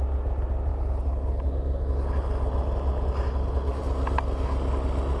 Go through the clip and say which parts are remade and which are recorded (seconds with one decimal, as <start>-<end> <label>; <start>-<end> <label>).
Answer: 0.0-5.2 recorded